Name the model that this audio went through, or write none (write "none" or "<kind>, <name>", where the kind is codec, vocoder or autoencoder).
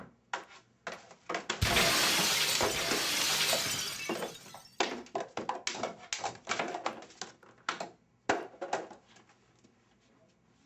none